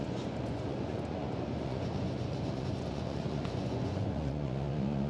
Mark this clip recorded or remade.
remade